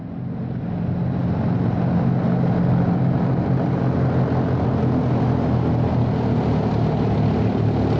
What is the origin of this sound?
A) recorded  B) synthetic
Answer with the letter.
A